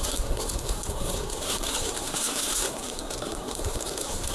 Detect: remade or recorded remade